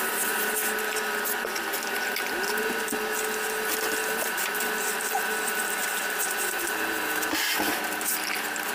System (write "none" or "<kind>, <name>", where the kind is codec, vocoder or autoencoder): none